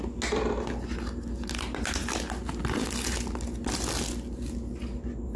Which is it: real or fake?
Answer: real